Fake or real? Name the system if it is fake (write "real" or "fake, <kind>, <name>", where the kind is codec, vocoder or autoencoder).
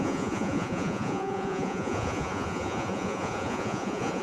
fake, vocoder, Vocos